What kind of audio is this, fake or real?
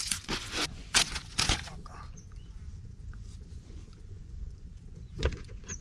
fake